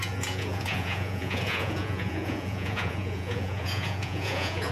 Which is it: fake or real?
fake